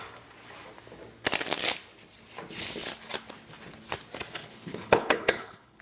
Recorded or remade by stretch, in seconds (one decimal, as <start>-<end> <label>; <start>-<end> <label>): 0.0-4.4 recorded; 4.4-5.8 remade